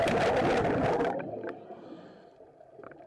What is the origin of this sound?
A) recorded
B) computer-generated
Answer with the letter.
A